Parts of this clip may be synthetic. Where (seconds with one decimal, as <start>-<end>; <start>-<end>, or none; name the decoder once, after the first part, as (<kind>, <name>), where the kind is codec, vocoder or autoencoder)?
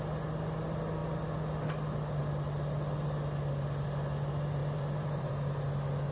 4.6-5.3 (vocoder, BigVGAN v2)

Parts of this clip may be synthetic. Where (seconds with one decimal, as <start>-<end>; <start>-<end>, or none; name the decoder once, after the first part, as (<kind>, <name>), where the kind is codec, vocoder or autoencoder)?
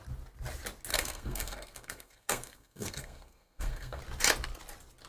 0.9-4.0 (codec, SNAC)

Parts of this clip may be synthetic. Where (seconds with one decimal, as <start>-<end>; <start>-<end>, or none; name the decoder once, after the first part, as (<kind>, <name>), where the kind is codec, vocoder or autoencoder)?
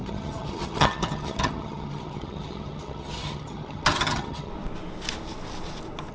0.0-4.5 (vocoder, HiFi-GAN)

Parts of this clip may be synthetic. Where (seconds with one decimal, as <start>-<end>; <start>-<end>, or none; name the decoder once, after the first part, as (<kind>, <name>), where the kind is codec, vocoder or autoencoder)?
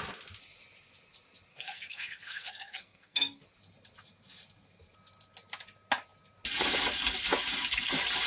1.5-3.4 (codec, SNAC)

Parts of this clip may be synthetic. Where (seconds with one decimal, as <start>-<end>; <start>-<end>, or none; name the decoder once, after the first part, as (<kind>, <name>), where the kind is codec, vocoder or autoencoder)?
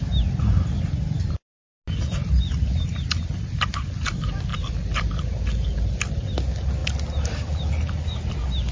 4.5-6.2 (vocoder, BigVGAN v2)